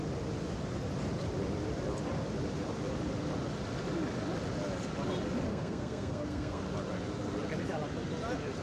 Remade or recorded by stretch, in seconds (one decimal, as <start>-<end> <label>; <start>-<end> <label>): 0.0-5.5 recorded; 5.5-6.6 remade; 6.6-8.6 recorded

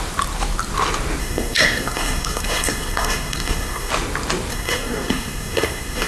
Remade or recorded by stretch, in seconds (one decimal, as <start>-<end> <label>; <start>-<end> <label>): 0.0-1.2 recorded; 1.2-3.9 remade; 3.9-4.5 recorded; 4.5-6.1 remade